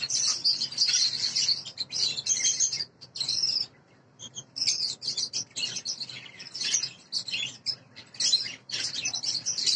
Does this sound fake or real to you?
real